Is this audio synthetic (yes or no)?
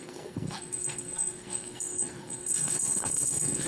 yes